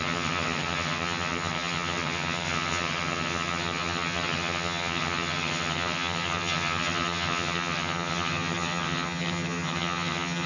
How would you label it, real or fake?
fake